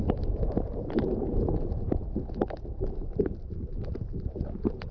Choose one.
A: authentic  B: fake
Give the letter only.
B